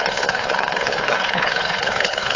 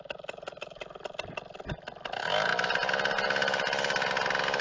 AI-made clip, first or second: first